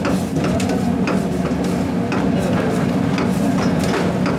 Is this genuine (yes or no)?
yes